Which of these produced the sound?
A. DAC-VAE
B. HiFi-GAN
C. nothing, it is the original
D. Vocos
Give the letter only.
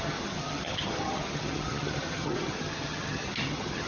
B